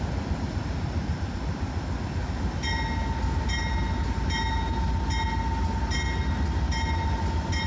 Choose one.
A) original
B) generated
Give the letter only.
A